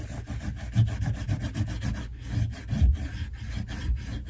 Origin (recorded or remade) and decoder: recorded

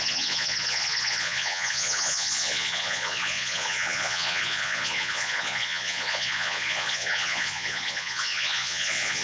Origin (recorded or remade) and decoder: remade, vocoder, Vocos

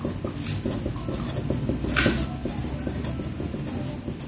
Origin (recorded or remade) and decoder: recorded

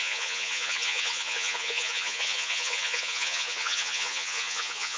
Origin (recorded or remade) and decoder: remade, vocoder, Vocos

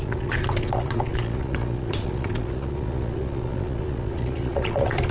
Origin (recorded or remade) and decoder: remade, vocoder, Vocos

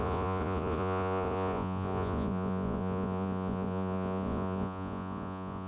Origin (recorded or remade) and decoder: remade, vocoder, Vocos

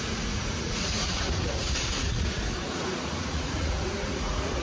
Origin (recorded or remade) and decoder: remade, vocoder, Vocos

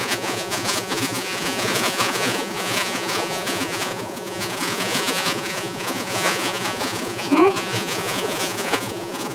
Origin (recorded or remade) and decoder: remade, vocoder, Vocos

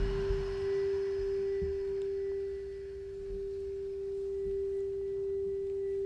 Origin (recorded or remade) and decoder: recorded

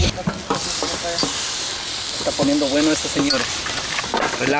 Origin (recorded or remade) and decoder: recorded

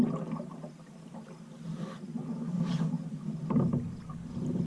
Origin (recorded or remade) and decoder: recorded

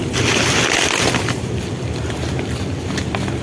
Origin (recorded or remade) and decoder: recorded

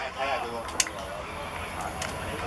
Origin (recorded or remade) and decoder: recorded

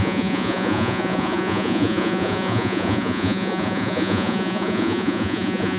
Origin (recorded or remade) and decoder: remade, vocoder, Vocos